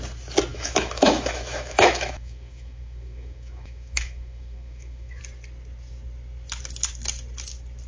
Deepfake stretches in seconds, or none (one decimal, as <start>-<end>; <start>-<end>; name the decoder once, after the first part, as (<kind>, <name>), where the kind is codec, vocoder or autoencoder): 0.5-5.2 (autoencoder, DAC-VAE)